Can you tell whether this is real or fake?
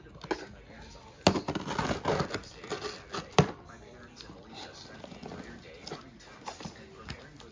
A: real